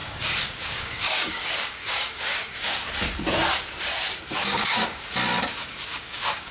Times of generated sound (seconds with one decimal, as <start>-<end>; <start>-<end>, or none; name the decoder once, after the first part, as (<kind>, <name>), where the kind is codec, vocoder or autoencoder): 0.0-2.9 (codec, DAC); 4.4-5.0; 5.5-6.5